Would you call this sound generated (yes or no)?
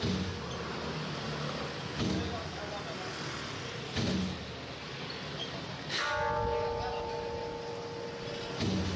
no